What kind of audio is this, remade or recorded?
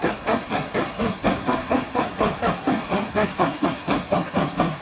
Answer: remade